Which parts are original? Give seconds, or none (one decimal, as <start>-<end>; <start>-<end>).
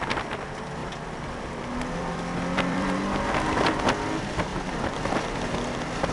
0.0-0.8; 3.3-6.1